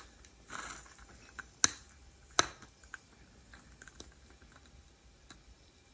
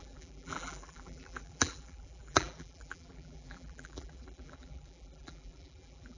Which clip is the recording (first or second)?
first